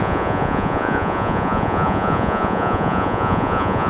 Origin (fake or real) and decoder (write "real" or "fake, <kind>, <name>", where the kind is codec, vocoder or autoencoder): fake, vocoder, Vocos